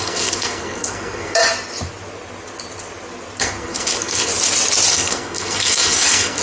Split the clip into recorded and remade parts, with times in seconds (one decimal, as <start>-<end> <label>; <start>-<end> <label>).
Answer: 0.0-1.4 remade; 1.4-3.4 recorded; 3.4-4.3 remade; 4.3-4.9 recorded; 4.9-6.4 remade